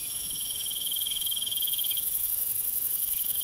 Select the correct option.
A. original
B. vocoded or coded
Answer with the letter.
B